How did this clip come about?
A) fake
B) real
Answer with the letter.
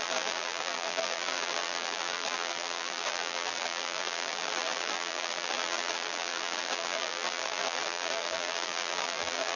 A